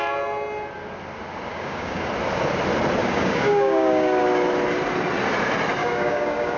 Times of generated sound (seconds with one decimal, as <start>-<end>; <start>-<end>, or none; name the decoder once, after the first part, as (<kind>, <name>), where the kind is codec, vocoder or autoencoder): 1.5-2.1 (codec, DAC); 3.0-4.2; 5.8-6.6

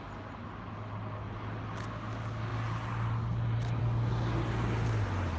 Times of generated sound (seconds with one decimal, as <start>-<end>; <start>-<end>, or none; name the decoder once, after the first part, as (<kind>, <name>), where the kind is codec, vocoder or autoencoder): none